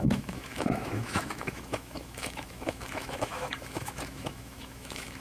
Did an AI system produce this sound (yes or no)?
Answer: yes